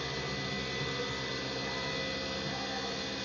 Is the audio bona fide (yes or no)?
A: yes